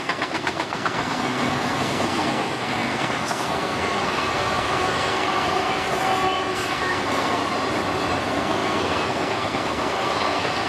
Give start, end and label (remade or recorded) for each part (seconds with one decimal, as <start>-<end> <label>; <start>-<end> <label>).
0.0-7.4 remade; 7.4-8.2 recorded; 8.2-10.7 remade